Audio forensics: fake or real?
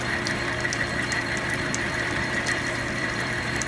fake